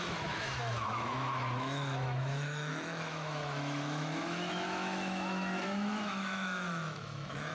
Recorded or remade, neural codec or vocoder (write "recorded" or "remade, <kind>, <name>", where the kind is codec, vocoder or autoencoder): remade, autoencoder, DAC-VAE